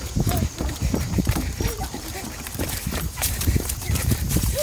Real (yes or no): no